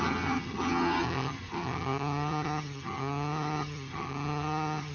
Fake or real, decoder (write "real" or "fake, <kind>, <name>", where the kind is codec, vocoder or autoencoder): fake, vocoder, HiFi-GAN